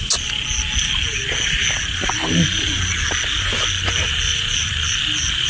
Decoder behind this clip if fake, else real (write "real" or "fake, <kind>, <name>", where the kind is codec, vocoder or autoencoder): real